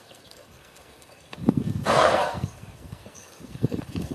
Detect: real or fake fake